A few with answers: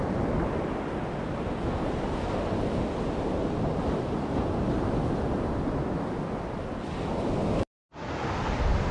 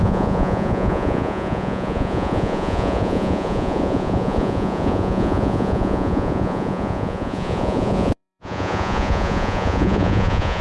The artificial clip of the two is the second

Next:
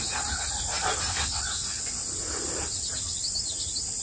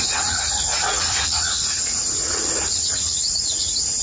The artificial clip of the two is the second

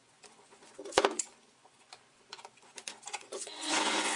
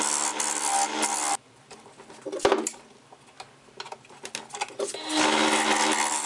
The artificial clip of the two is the first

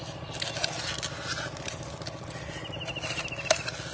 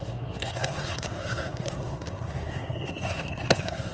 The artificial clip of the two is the second